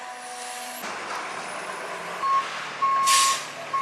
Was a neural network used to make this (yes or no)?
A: no